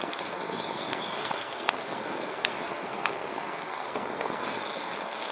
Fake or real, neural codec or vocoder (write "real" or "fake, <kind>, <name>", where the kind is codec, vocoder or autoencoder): fake, codec, SNAC